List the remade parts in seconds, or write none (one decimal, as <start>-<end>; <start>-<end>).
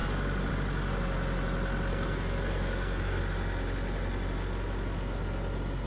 1.9-3.2